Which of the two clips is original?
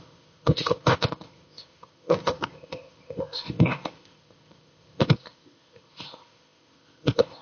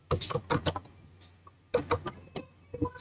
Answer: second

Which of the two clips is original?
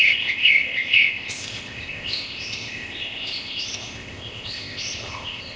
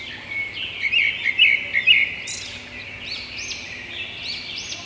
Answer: second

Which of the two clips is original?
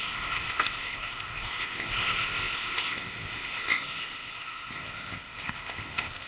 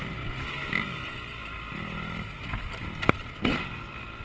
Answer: second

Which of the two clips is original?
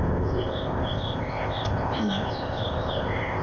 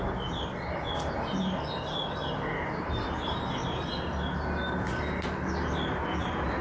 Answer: second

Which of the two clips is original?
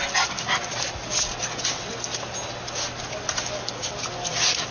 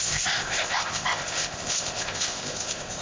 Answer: first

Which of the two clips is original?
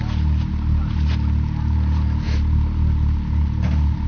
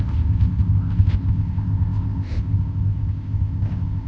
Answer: first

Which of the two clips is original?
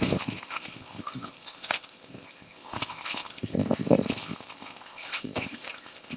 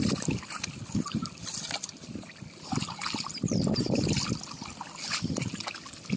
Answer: second